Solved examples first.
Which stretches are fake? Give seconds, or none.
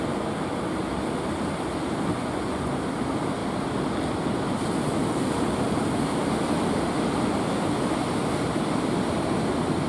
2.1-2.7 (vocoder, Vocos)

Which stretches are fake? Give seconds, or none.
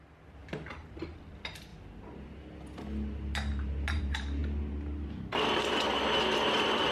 none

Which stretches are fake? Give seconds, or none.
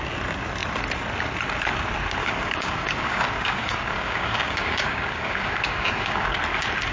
2.2-6.3 (codec, DAC)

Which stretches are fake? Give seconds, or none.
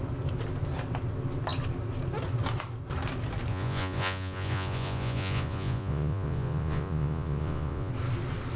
3.5-7.9 (vocoder, Vocos)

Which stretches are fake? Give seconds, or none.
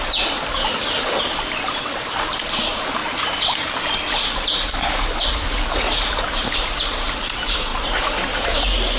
none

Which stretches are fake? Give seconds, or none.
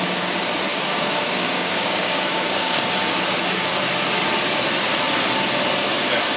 0.7-2.9 (codec, DAC)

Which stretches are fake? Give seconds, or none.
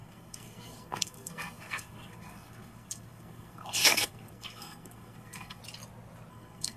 0.0-5.6 (codec, SNAC); 6.3-6.8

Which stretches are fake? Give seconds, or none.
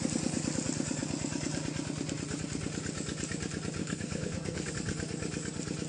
3.8-4.7 (codec, SNAC)